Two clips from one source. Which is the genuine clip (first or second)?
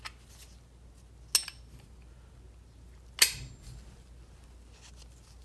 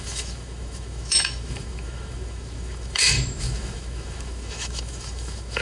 first